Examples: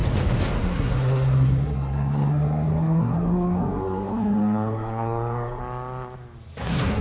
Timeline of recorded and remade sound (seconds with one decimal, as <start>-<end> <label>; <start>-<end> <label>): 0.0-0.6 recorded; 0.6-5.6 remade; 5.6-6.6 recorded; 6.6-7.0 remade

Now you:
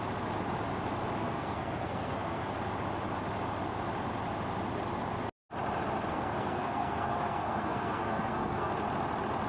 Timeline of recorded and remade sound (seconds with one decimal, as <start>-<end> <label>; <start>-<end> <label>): 0.0-1.2 recorded; 1.2-2.5 remade; 2.5-6.1 recorded; 6.1-8.7 remade; 8.7-9.5 recorded

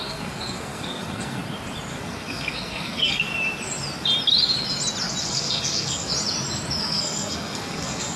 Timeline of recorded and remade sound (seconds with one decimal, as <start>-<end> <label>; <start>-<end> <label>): 0.0-1.4 remade; 1.4-1.9 recorded; 1.9-3.3 remade; 3.3-5.2 recorded; 5.2-6.1 remade; 6.1-6.8 recorded; 6.8-8.2 remade

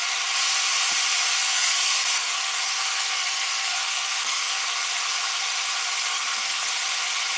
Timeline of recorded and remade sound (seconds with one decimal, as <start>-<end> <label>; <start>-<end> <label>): 0.0-1.4 recorded; 1.4-4.6 remade; 4.6-6.1 recorded; 6.1-6.7 remade; 6.7-7.4 recorded

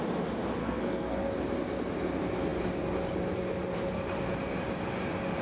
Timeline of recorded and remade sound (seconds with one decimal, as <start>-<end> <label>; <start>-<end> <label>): 0.0-0.6 recorded; 0.6-1.3 remade; 1.3-5.4 recorded